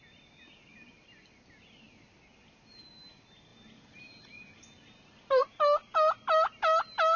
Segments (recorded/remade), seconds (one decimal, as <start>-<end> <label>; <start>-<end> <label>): 0.0-7.2 recorded